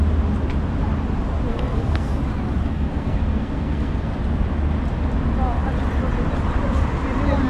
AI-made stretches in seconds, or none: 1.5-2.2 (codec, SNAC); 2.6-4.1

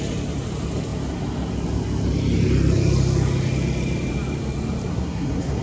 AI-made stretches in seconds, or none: 4.9-5.6 (codec, SNAC)